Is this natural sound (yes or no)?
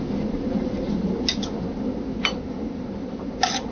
yes